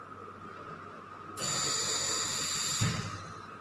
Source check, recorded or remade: recorded